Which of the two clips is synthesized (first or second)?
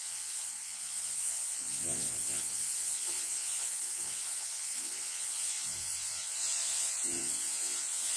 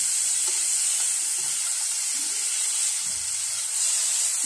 first